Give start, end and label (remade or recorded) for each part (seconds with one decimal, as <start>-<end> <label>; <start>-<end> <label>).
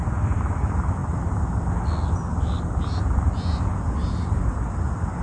0.0-5.2 recorded